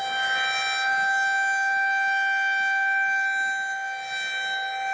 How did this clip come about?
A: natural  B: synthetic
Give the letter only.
A